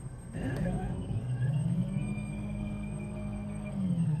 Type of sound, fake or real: fake